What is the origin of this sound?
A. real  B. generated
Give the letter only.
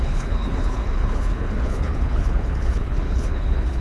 B